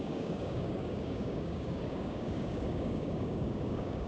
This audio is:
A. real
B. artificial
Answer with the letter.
B